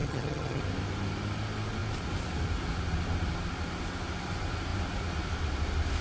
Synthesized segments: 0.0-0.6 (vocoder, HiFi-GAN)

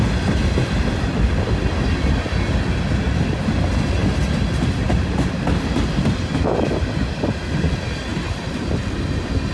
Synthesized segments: none

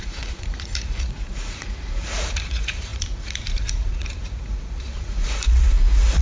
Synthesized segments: 0.0-6.2 (vocoder, Vocos)

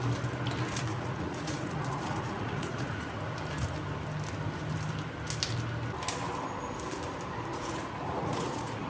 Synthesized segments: 0.9-3.1 (vocoder, Vocos); 7.5-8.9

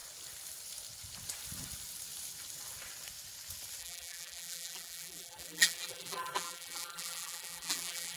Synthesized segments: 3.8-8.2 (vocoder, BigVGAN v2)

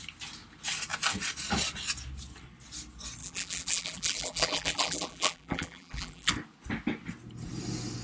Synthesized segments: 3.2-6.3 (vocoder, BigVGAN v2)

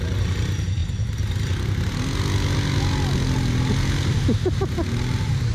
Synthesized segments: none